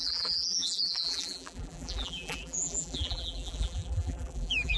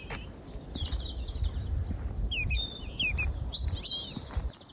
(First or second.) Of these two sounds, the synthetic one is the first